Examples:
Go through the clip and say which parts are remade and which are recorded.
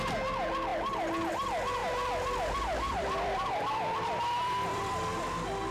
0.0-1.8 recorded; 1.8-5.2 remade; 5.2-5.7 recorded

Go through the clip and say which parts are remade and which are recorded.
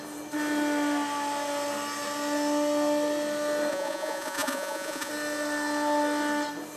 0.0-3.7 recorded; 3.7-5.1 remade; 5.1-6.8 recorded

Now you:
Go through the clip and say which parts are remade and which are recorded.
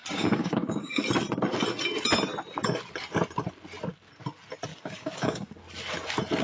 0.0-1.0 remade; 1.0-4.7 recorded; 4.7-5.6 remade; 5.6-6.4 recorded